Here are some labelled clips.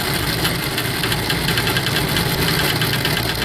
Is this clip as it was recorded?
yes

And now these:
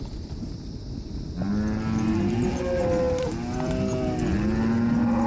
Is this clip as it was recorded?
yes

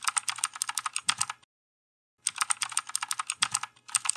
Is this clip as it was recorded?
yes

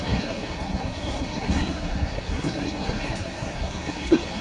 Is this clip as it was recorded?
no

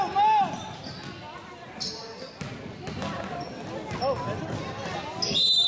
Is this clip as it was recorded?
yes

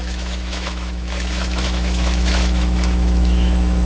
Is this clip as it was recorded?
no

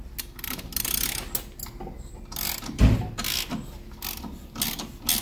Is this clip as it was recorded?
yes